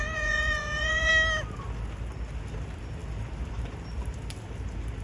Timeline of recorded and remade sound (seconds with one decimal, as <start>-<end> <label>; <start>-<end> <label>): 0.0-1.1 remade; 1.1-5.0 recorded